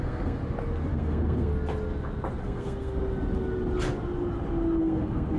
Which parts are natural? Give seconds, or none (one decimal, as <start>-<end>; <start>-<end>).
0.4-0.9; 1.5-2.4; 3.0-4.8